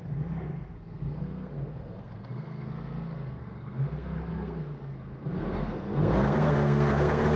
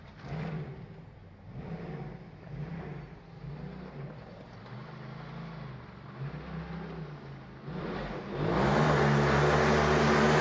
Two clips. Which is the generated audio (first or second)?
first